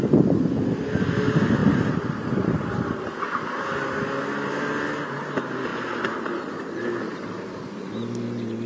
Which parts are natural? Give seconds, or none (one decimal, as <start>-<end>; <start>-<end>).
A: 0.0-1.6; 3.1-5.7; 6.5-8.7